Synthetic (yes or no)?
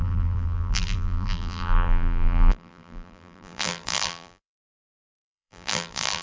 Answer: yes